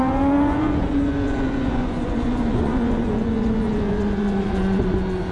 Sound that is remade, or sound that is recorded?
remade